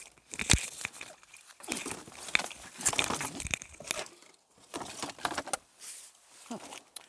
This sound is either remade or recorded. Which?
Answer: recorded